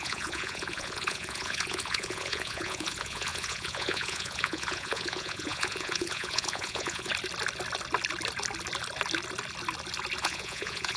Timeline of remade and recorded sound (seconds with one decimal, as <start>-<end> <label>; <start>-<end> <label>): 0.0-7.1 remade; 7.1-10.2 recorded; 10.2-11.0 remade